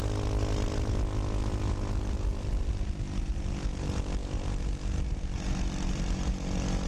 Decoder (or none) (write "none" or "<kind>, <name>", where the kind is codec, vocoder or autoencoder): none